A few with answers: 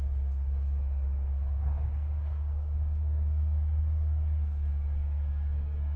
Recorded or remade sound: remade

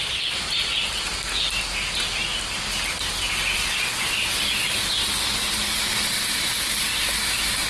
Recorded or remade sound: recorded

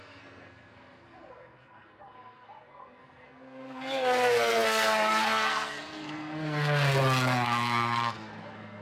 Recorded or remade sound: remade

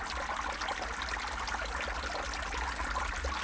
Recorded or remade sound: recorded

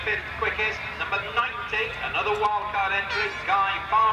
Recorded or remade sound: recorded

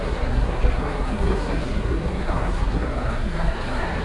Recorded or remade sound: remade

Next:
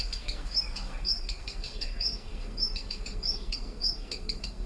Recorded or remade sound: remade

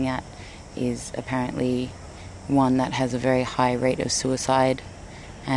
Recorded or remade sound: recorded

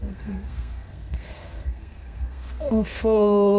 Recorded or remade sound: remade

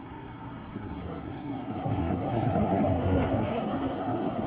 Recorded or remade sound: remade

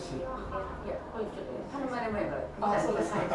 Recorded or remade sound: recorded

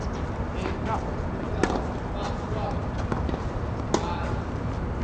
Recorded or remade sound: recorded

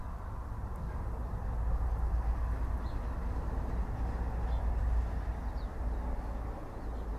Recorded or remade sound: recorded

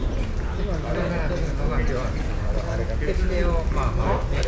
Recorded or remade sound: recorded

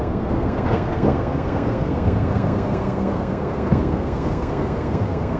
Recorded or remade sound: remade